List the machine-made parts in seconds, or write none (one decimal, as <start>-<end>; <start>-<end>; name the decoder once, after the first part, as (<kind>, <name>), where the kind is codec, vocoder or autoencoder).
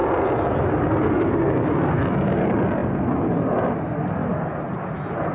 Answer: none